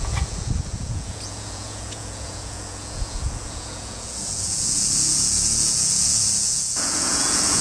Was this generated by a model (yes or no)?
yes